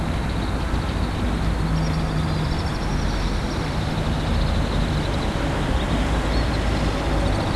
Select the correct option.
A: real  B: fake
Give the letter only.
A